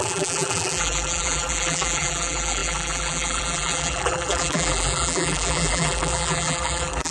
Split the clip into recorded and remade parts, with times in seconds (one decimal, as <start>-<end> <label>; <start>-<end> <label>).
0.0-7.1 remade